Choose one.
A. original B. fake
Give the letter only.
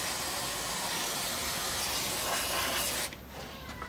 A